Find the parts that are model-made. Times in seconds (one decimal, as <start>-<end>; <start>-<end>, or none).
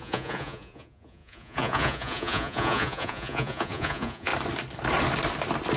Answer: 0.0-4.3